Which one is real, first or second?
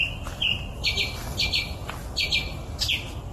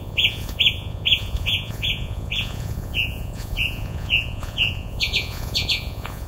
first